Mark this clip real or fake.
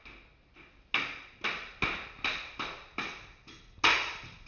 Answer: real